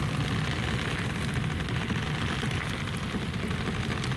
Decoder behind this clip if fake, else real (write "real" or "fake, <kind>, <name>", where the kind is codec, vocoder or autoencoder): real